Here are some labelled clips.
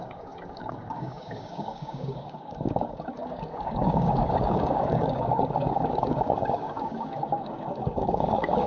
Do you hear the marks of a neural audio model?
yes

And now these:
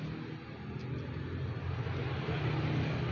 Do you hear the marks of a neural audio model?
no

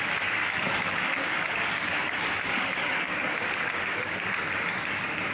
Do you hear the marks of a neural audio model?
yes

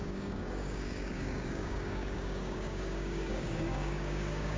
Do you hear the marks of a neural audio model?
yes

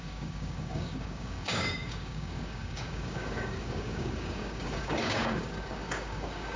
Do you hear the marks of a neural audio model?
yes